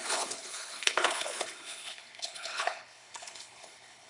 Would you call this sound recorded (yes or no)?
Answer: no